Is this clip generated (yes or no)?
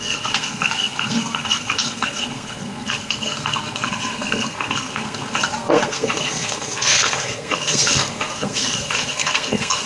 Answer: yes